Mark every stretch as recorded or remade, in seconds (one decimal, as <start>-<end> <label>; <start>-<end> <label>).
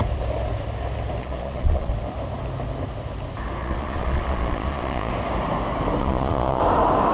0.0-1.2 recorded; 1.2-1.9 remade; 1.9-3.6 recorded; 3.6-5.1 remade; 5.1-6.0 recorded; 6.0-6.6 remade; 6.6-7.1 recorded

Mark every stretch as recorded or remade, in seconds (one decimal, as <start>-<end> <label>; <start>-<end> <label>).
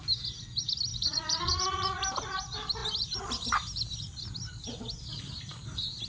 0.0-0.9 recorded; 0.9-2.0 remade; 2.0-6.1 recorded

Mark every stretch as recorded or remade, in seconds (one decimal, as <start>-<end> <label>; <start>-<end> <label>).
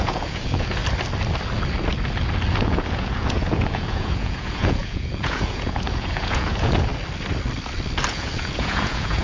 0.0-0.8 remade; 0.8-2.6 recorded; 2.6-6.9 remade; 6.9-8.1 recorded; 8.1-9.2 remade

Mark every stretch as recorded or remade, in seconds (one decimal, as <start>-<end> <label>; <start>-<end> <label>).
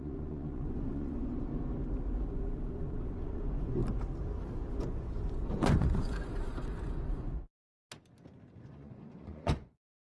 0.0-1.5 remade; 1.5-2.3 recorded; 2.3-3.8 remade; 3.8-4.8 recorded; 4.8-7.8 remade; 7.8-8.6 recorded; 8.6-10.1 remade